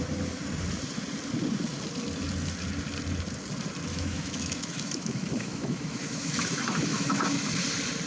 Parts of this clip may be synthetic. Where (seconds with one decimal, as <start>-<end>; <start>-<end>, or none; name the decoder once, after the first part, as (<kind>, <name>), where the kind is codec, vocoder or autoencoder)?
3.9-7.5 (autoencoder, DAC-VAE)